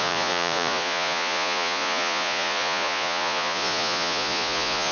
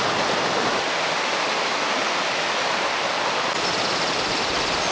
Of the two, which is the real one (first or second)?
second